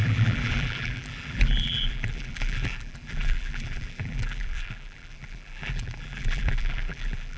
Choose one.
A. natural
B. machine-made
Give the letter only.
B